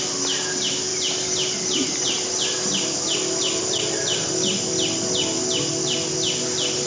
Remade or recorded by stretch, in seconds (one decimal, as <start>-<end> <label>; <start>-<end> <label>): 0.0-6.9 recorded